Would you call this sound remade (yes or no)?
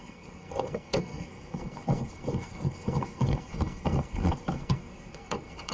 yes